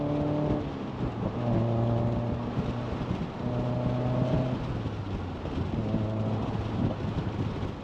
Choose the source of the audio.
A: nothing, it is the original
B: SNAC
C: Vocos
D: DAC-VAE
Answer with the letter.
A